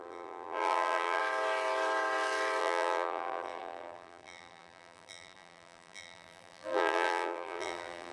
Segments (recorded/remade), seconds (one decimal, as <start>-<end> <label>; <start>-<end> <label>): 0.0-1.2 remade; 1.2-2.6 recorded; 2.6-8.1 remade